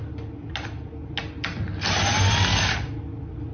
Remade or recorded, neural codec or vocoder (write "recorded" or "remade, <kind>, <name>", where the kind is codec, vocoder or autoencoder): recorded